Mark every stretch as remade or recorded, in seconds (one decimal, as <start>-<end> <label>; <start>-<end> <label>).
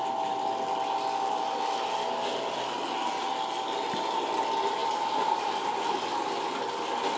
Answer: 0.0-4.8 recorded; 4.8-5.8 remade; 5.8-7.2 recorded